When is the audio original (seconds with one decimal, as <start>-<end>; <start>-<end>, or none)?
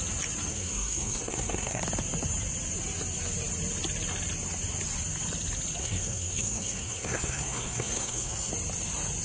0.0-0.5; 1.8-5.8; 8.5-9.2